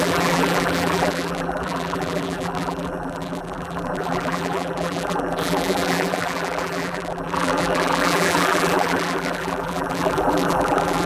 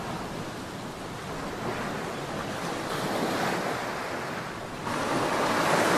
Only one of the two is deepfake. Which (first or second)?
first